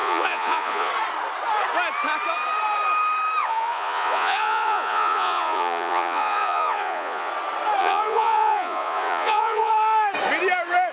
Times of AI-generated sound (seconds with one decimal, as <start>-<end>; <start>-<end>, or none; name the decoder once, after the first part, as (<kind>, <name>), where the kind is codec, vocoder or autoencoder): 0.0-0.9 (vocoder, Vocos); 3.4-7.3; 7.8-9.7